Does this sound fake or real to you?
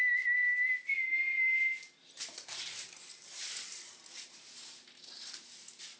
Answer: real